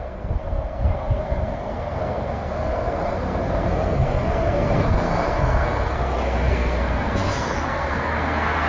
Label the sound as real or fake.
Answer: fake